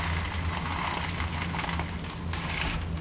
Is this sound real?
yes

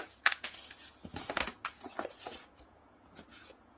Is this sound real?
no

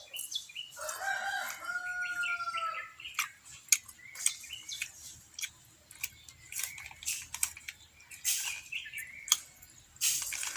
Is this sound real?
yes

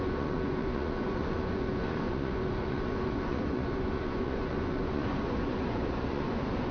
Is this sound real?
no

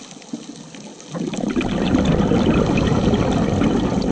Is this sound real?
yes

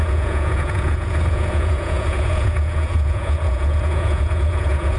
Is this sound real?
no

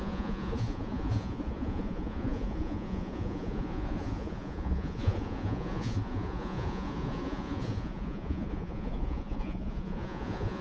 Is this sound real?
no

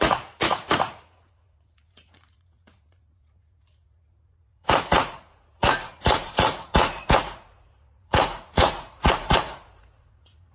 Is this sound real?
no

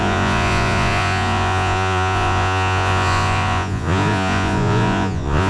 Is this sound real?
no